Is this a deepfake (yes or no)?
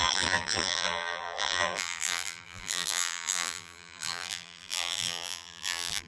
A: yes